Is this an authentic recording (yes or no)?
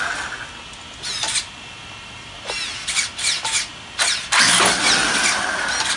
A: yes